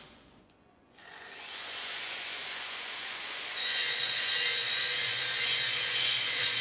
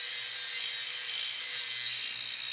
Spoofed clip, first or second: first